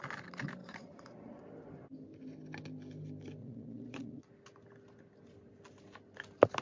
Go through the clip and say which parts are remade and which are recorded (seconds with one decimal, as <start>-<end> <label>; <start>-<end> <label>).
0.0-0.6 recorded; 0.6-1.4 remade; 1.4-3.4 recorded; 3.4-4.3 remade; 4.3-6.6 recorded